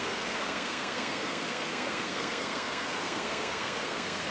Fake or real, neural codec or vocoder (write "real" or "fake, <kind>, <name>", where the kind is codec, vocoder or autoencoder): fake, codec, SNAC